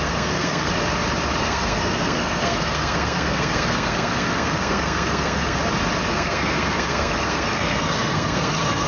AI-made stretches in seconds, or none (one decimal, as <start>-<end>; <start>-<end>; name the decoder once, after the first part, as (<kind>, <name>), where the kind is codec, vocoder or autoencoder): 0.0-0.7 (codec, SNAC); 1.4-5.6; 6.1-8.9